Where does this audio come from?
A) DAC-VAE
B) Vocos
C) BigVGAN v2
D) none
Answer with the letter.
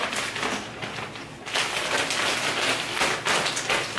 D